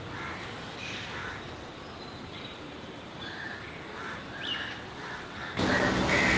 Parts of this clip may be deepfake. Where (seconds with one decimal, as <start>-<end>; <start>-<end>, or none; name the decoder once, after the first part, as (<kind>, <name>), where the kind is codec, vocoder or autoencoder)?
1.2-4.9 (vocoder, BigVGAN v2)